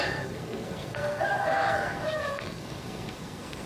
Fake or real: fake